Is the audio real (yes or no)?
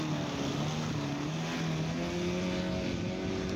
yes